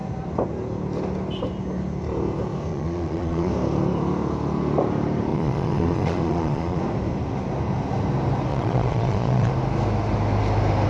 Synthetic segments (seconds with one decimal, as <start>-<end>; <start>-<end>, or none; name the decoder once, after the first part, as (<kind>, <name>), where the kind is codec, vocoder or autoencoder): 2.7-3.5 (vocoder, Vocos); 5.3-6.8; 8.5-9.5